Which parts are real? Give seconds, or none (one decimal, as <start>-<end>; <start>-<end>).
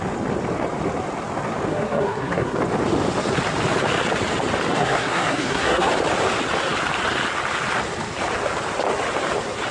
0.0-1.7; 2.6-4.7; 5.9-9.7